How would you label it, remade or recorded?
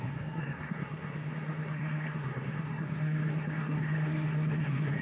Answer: remade